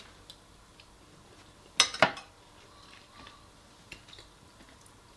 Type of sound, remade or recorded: recorded